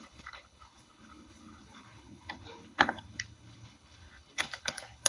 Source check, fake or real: fake